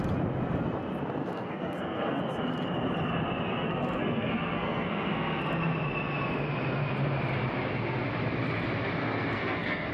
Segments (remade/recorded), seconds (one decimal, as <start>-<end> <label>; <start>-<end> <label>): 0.0-1.2 recorded; 1.2-2.2 remade; 2.2-3.5 recorded; 3.5-5.4 remade; 5.4-9.0 recorded; 9.0-9.9 remade